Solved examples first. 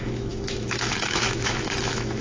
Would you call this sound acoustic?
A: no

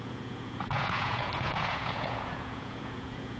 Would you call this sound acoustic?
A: no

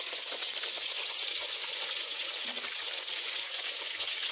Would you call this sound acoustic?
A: no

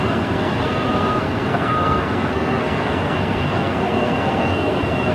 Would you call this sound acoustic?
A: no